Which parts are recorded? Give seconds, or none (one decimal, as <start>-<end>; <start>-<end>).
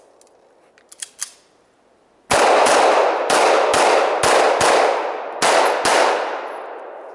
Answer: 0.0-7.1